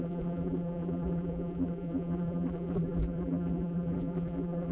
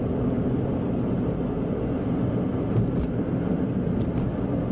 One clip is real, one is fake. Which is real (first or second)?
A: second